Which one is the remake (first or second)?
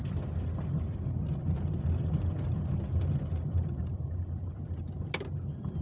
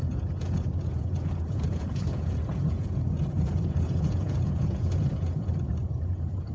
second